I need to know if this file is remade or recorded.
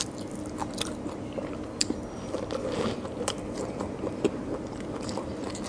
recorded